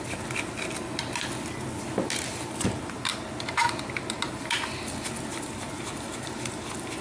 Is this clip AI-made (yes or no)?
no